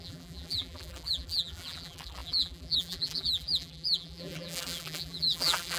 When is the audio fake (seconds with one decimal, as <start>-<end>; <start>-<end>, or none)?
0.0-5.8